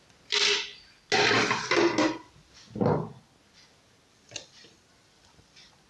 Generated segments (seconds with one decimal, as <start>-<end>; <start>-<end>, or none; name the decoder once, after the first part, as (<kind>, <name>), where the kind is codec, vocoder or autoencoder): none